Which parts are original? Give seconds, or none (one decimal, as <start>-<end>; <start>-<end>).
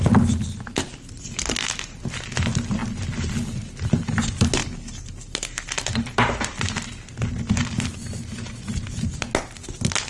0.0-10.1